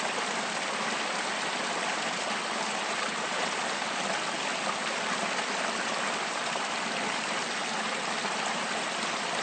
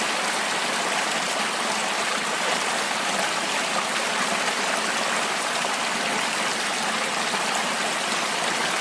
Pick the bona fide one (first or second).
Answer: second